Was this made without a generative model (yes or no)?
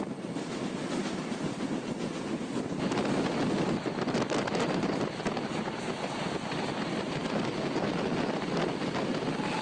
yes